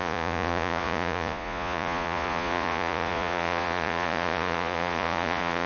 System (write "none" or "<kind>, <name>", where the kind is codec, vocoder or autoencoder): vocoder, Vocos